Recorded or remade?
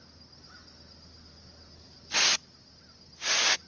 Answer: recorded